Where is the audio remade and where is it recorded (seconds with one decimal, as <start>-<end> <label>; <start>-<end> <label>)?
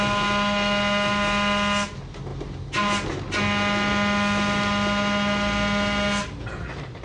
0.0-7.0 recorded